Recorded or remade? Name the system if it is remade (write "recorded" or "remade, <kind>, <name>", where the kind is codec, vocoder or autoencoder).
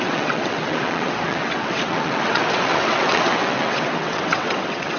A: remade, vocoder, WaveNeXt